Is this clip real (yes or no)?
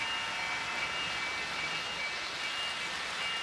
yes